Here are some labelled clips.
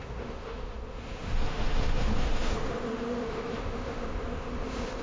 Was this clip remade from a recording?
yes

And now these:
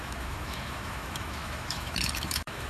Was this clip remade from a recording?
yes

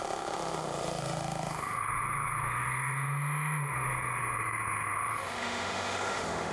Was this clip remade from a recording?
yes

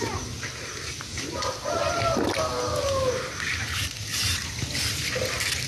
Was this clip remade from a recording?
no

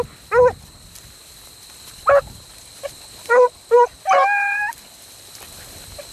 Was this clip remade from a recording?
no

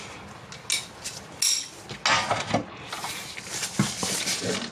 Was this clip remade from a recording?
no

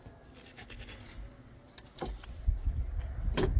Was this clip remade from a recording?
no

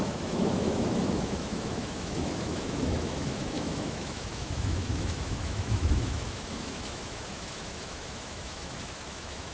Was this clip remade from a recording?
yes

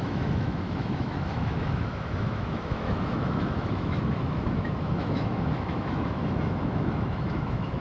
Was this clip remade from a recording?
yes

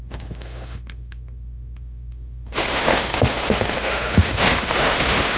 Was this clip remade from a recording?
yes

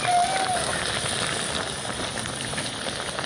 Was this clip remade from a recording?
no